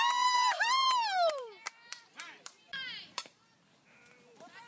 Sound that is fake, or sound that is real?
fake